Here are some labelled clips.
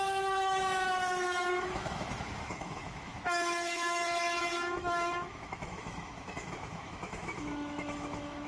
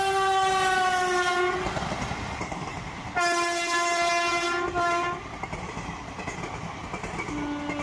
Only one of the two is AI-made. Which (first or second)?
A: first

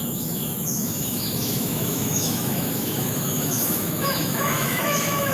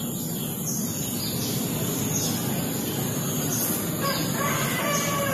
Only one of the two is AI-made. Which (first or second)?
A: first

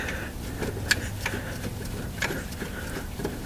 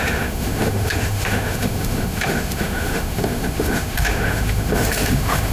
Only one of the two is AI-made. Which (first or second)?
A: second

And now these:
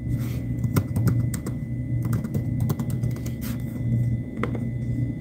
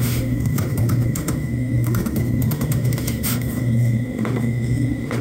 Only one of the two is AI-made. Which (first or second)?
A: second